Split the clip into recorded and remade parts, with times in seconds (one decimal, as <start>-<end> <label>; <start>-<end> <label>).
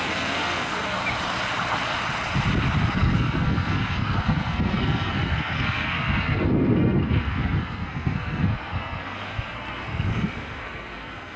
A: 0.0-1.0 remade; 1.0-2.9 recorded; 2.9-11.4 remade